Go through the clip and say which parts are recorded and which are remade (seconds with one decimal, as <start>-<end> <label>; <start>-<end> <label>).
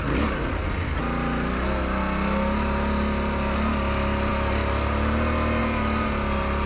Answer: 0.0-6.7 recorded